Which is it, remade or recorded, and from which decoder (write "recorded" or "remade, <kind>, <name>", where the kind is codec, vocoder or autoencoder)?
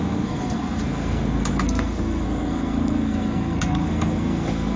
remade, codec, SNAC